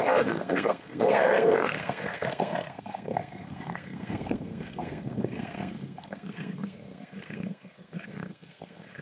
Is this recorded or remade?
remade